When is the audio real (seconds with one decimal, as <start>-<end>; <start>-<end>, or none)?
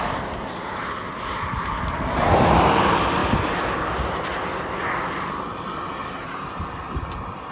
0.0-7.5